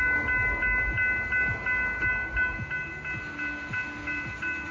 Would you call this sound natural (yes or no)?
yes